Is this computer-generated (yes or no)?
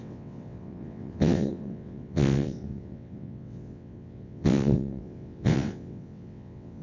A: yes